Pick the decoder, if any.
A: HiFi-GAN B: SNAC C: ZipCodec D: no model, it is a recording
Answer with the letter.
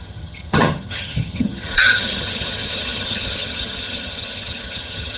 A